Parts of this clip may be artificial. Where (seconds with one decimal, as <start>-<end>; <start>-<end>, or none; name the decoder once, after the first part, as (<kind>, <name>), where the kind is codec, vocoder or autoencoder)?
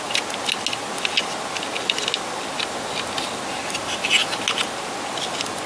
none